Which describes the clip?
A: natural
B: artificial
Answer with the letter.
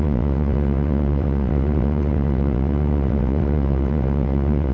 B